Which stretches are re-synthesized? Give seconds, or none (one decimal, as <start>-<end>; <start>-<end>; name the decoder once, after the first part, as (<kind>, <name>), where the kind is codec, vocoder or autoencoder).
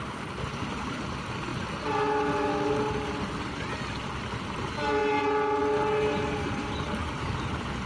none